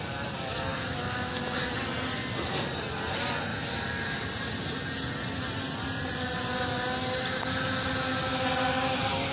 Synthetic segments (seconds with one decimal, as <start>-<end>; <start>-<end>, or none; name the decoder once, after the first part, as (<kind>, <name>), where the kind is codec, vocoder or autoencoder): 0.7-1.4 (autoencoder, DAC-VAE)